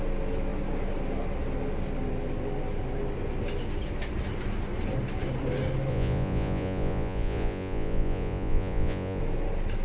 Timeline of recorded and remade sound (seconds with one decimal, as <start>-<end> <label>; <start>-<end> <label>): 0.0-5.9 recorded; 5.9-9.2 remade; 9.2-9.8 recorded